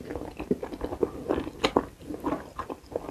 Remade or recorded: recorded